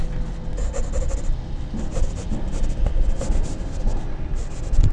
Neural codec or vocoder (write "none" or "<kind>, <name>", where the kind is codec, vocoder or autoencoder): none